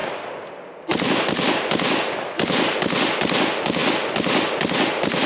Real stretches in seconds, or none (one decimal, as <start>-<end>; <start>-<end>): 0.0-5.3